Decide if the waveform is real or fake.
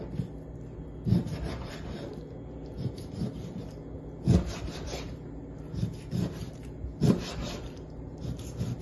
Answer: real